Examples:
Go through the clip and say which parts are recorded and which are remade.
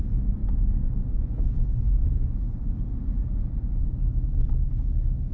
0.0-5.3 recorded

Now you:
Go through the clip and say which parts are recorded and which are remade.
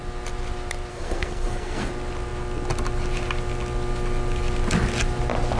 0.0-0.9 recorded; 0.9-1.9 remade; 1.9-5.6 recorded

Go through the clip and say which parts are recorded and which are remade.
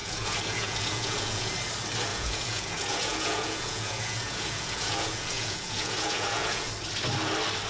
0.0-1.5 remade; 1.5-2.1 recorded; 2.1-6.7 remade; 6.7-7.7 recorded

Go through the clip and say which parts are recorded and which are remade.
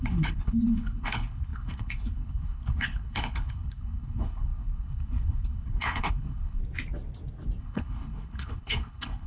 0.0-6.6 remade; 6.6-7.6 recorded; 7.6-9.3 remade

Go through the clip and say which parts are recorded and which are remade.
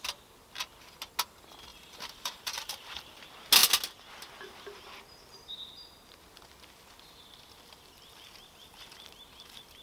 0.0-1.7 recorded; 1.7-3.2 remade; 3.2-9.8 recorded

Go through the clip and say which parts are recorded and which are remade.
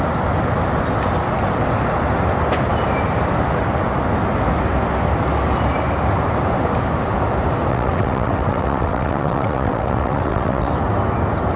0.0-7.7 recorded; 7.7-10.7 remade; 10.7-11.6 recorded